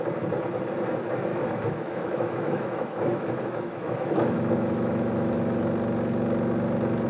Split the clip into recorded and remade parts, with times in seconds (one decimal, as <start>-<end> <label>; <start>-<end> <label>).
0.0-1.3 recorded; 1.3-5.6 remade; 5.6-7.1 recorded